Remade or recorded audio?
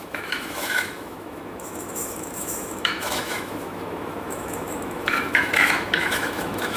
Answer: remade